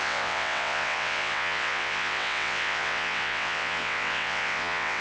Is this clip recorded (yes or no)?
no